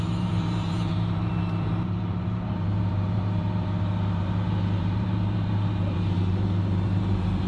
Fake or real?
fake